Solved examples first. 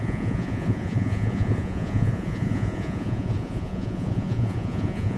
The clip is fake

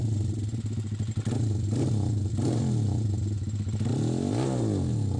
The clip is real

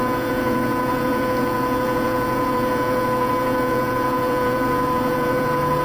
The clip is fake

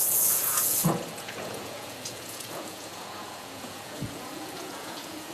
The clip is fake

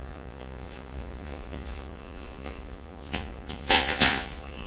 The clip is fake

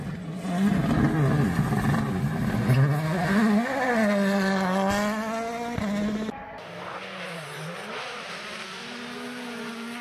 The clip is real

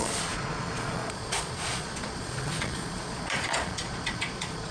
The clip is fake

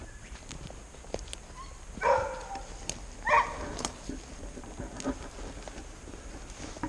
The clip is real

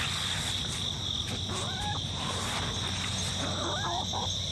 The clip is real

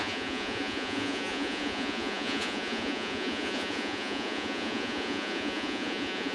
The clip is fake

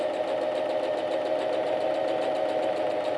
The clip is real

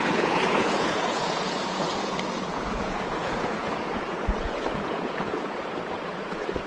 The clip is fake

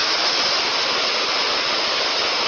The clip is real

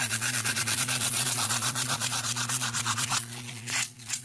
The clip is fake